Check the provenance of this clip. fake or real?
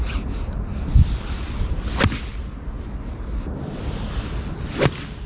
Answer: real